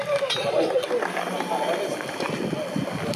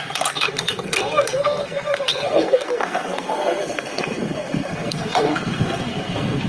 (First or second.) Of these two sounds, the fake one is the second